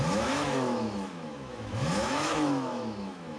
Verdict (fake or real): fake